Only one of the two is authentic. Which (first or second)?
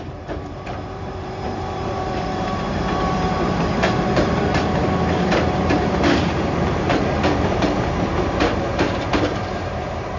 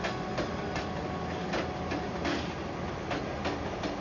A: second